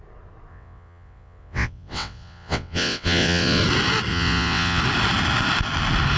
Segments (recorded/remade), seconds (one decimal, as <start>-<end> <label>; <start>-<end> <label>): 0.0-0.5 recorded; 0.5-3.6 remade; 3.6-4.1 recorded; 4.1-4.8 remade; 4.8-6.2 recorded